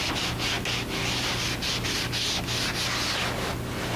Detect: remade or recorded recorded